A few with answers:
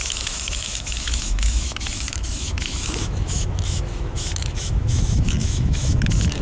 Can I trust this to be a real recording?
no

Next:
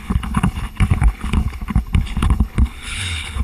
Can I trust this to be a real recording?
no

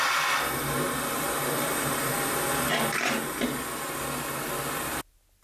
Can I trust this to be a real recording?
yes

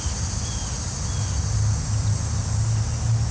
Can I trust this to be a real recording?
yes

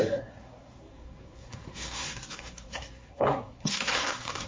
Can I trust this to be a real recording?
no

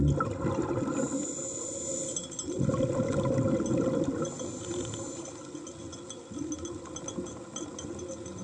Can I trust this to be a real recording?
yes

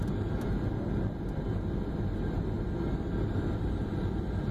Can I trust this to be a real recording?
yes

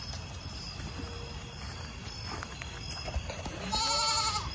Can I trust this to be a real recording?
yes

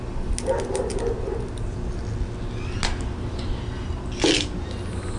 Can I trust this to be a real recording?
yes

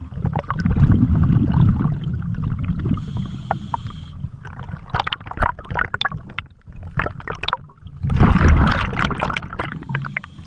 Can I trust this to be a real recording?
yes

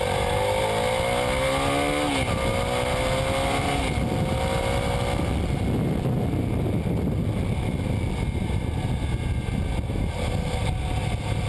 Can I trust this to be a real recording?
yes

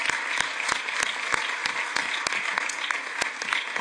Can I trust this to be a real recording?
yes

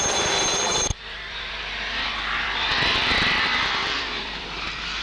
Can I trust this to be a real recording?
no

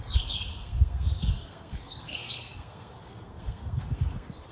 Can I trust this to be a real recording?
no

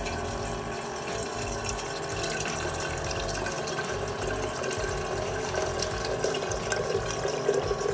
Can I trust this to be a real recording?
yes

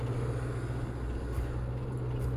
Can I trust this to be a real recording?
yes